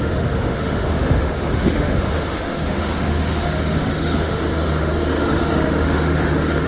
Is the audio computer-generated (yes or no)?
yes